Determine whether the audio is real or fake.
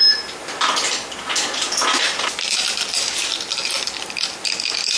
real